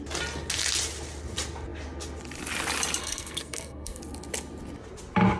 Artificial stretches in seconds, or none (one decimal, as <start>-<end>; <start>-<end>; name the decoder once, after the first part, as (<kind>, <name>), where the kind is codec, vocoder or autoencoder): 3.0-4.0 (codec, SNAC)